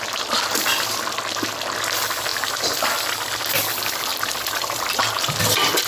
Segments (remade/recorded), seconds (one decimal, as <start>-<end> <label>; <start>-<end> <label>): 0.0-4.1 recorded; 4.1-5.4 remade; 5.4-5.9 recorded